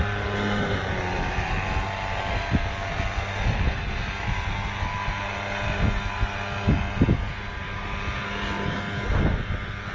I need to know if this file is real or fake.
real